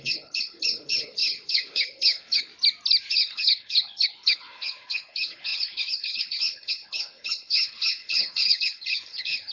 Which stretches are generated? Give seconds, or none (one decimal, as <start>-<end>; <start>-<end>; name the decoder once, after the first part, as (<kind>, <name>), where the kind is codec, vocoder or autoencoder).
0.0-2.5 (codec, HILCodec); 3.1-9.5